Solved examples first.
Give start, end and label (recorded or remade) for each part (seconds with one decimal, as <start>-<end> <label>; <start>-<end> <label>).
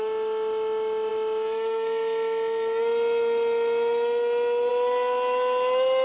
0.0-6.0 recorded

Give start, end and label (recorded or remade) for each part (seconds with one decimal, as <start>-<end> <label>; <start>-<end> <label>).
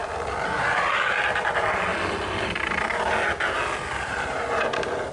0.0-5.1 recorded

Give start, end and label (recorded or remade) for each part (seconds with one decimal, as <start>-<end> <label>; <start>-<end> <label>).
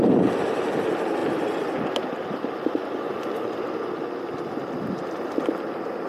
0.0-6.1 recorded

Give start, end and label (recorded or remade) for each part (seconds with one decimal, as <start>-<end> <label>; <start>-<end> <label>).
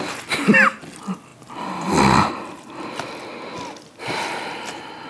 0.0-5.1 recorded